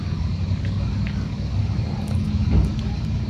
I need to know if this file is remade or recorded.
remade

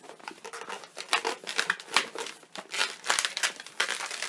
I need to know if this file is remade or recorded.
remade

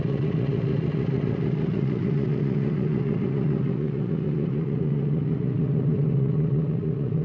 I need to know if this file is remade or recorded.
remade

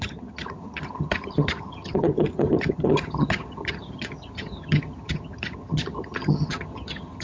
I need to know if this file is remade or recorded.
remade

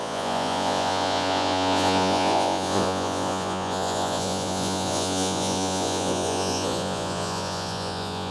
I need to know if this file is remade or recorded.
remade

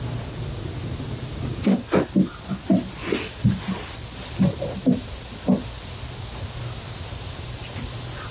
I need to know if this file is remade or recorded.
recorded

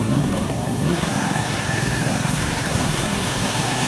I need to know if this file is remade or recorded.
remade